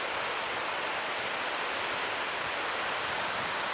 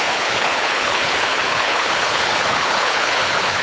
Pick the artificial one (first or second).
second